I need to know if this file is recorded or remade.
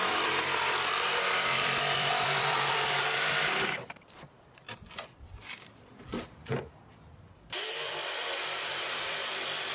remade